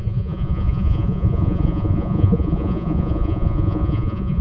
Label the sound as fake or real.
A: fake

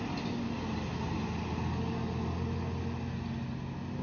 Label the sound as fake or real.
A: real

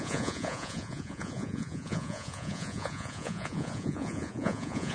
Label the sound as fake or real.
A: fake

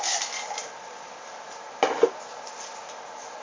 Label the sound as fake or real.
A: real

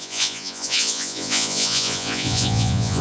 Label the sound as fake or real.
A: fake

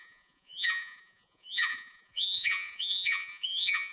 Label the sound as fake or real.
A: fake